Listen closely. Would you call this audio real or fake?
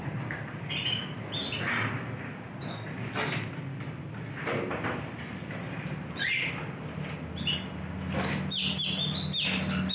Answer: real